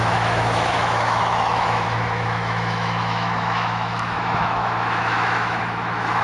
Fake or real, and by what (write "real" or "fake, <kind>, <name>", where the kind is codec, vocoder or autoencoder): fake, autoencoder, DAC-VAE